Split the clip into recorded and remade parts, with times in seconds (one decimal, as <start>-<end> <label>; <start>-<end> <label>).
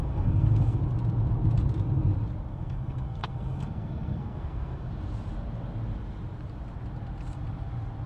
0.0-0.8 remade; 0.8-2.5 recorded; 2.5-4.9 remade; 4.9-8.1 recorded